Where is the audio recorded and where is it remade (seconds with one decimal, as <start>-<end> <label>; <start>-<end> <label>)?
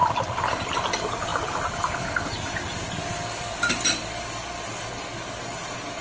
0.0-0.9 remade; 0.9-1.3 recorded; 1.3-4.9 remade; 4.9-6.0 recorded